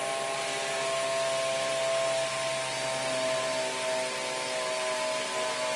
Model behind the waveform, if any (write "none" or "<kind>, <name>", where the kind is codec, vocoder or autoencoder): none